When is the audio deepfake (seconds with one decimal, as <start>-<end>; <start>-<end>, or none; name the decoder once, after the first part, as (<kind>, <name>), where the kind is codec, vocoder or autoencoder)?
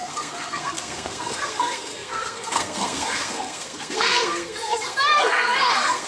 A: 0.0-6.1 (codec, SNAC)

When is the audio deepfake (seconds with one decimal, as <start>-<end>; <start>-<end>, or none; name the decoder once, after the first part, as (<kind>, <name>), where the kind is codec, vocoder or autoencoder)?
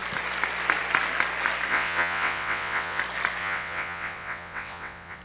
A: 1.7-3.0 (vocoder, WaveNeXt); 3.4-5.2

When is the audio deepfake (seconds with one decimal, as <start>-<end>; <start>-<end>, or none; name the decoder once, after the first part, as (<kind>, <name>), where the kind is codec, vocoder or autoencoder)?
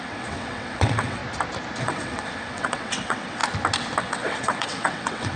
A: 0.0-1.2 (vocoder, WaveNeXt); 1.8-3.4; 4.0-5.4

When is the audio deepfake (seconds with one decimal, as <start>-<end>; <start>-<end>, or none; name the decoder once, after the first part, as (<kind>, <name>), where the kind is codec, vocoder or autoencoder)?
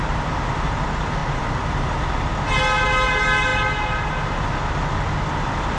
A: 1.2-1.9 (vocoder, BigVGAN v2)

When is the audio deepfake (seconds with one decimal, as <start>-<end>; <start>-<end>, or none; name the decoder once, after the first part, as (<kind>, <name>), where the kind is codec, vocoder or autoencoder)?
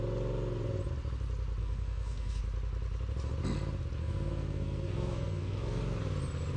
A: 1.6-2.4 (codec, SNAC); 4.0-5.8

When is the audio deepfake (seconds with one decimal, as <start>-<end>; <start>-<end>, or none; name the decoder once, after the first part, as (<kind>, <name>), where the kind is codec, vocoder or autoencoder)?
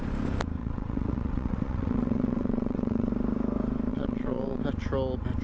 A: 0.6-3.1 (vocoder, WaveNeXt); 3.9-4.6